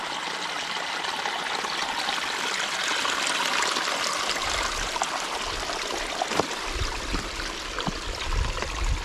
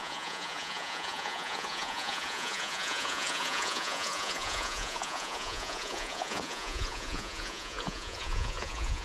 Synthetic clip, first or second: second